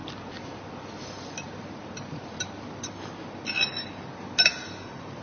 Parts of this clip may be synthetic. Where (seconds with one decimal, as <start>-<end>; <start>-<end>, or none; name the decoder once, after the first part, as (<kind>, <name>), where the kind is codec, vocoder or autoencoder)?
0.0-3.1 (vocoder, BigVGAN v2)